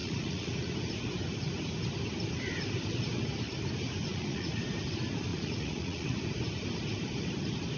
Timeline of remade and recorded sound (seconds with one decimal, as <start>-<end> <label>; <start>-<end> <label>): 0.0-0.7 remade; 0.7-4.1 recorded; 4.1-4.6 remade; 4.6-5.3 recorded; 5.3-6.2 remade; 6.2-7.8 recorded